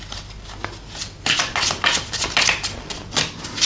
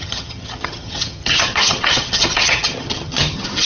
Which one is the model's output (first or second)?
second